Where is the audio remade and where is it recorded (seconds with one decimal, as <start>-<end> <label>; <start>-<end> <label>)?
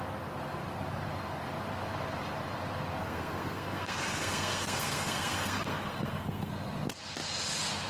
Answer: 0.0-3.0 recorded; 3.0-6.5 remade; 6.5-7.9 recorded